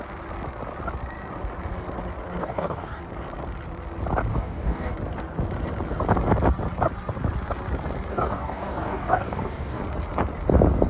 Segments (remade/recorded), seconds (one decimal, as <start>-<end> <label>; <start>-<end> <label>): 0.0-2.4 recorded; 2.4-3.0 remade; 3.0-4.3 recorded; 4.3-4.9 remade; 4.9-8.1 recorded; 8.1-9.8 remade; 9.8-10.9 recorded